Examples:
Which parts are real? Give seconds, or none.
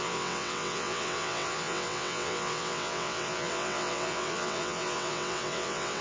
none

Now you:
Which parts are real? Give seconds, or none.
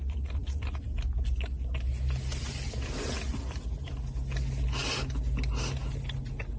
0.0-6.6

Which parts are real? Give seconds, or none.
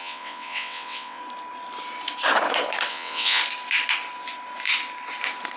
1.2-2.9; 3.4-5.6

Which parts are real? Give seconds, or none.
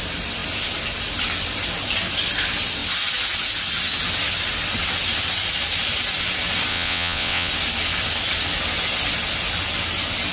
0.0-6.7; 7.5-10.3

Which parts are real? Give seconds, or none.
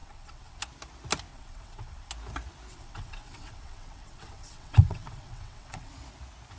0.6-1.3; 2.1-2.7; 5.9-6.6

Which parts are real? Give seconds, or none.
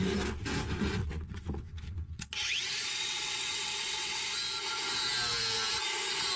0.0-1.0; 4.2-6.4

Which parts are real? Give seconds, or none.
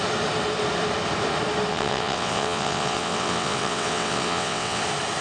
0.0-1.7; 4.8-5.2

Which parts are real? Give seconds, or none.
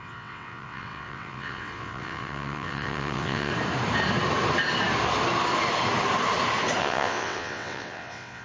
3.5-6.8